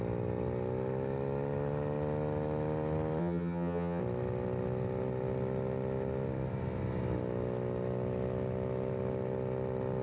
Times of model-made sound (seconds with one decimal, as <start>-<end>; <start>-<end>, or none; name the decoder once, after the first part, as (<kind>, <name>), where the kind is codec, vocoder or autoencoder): 3.2-4.0 (vocoder, HiFi-GAN)